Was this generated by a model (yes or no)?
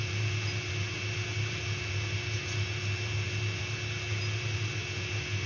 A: no